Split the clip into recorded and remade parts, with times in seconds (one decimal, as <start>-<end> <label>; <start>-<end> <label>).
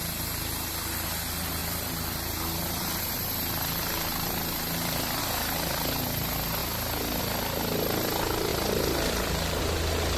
0.0-1.6 recorded; 1.6-5.2 remade; 5.2-8.5 recorded; 8.5-9.6 remade; 9.6-10.2 recorded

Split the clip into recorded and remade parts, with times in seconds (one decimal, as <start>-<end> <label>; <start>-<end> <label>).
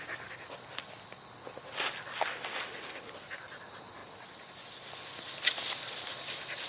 0.0-6.7 recorded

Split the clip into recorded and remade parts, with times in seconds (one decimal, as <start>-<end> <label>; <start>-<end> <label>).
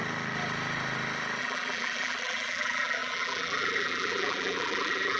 0.0-1.4 recorded; 1.4-5.2 remade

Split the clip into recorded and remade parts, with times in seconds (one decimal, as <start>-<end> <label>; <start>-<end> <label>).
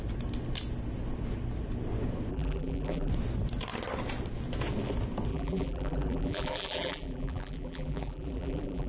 0.0-2.3 recorded; 2.3-3.1 remade; 3.1-5.3 recorded; 5.3-8.9 remade